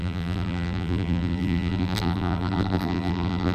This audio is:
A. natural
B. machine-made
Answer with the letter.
B